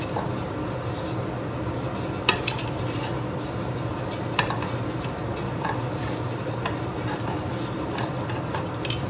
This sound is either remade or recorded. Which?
recorded